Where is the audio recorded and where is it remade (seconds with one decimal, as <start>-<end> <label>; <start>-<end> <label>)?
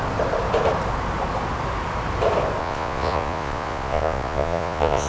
0.0-2.6 recorded; 2.6-5.1 remade